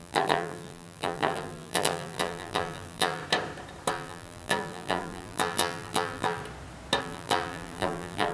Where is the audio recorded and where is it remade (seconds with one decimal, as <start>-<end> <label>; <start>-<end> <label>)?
0.0-3.2 remade; 3.2-3.9 recorded; 3.9-6.4 remade; 6.4-7.0 recorded; 7.0-8.3 remade